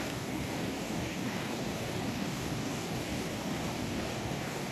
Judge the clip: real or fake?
fake